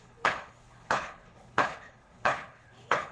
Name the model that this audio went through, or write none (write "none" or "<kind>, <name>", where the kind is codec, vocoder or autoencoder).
codec, HILCodec